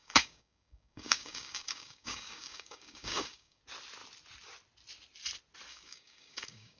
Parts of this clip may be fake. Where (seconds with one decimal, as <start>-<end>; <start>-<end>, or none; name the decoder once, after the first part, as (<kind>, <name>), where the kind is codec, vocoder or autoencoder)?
0.0-3.6 (codec, DAC); 5.7-6.8